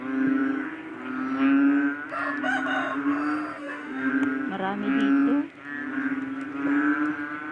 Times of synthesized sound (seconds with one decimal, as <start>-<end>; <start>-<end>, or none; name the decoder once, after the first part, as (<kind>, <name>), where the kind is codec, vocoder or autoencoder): 3.6-4.1 (autoencoder, DAC-VAE)